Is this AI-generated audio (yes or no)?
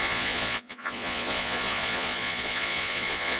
yes